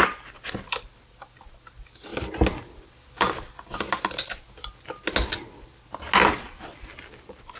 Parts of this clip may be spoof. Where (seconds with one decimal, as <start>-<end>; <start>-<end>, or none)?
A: none

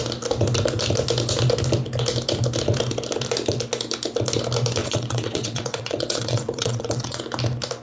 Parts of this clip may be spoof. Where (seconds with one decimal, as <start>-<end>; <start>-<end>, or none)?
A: 4.8-7.2

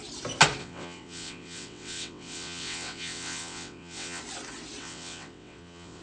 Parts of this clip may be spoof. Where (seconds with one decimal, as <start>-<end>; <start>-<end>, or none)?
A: 0.6-4.2; 4.8-6.0

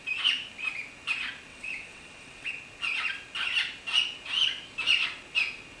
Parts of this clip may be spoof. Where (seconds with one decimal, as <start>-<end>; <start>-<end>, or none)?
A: 1.5-2.5